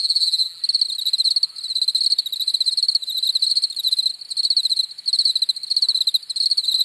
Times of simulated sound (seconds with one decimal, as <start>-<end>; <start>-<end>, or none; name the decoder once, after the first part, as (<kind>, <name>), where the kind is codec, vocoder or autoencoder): 0.0-0.6 (vocoder, BigVGAN v2)